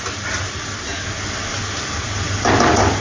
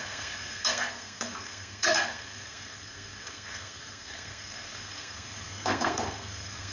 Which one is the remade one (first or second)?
second